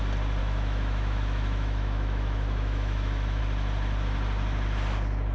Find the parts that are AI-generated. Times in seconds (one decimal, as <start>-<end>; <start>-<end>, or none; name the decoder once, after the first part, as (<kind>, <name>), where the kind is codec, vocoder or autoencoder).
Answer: 0.4-3.4 (autoencoder, DAC-VAE)